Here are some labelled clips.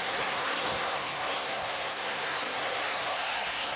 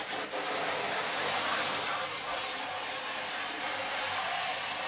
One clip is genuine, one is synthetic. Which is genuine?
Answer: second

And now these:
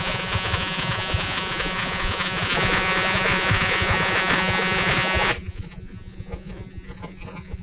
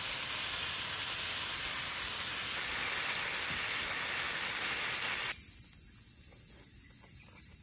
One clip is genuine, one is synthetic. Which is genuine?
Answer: second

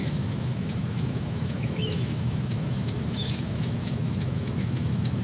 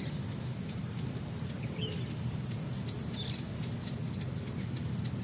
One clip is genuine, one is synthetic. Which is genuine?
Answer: second